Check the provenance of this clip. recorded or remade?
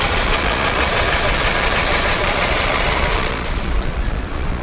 remade